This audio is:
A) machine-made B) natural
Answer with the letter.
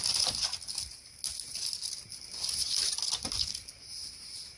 B